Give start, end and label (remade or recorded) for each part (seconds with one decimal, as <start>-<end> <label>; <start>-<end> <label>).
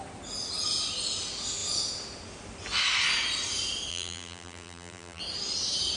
0.0-3.9 recorded; 3.9-5.2 remade; 5.2-6.0 recorded